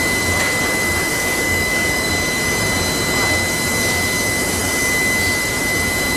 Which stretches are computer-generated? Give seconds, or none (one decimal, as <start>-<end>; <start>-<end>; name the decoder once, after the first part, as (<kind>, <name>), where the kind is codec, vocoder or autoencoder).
1.1-2.1 (codec, DAC)